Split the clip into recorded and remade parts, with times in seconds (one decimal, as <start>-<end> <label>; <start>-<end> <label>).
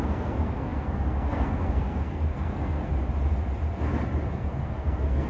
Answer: 0.0-2.9 remade; 2.9-4.3 recorded; 4.3-5.3 remade